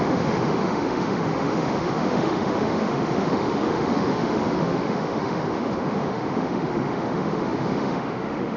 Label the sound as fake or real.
fake